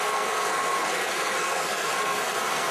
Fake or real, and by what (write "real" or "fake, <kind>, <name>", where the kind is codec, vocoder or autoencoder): fake, codec, SNAC